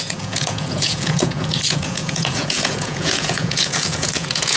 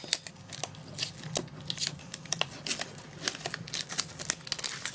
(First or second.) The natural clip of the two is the second